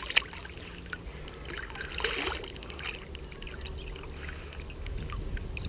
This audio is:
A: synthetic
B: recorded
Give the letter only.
B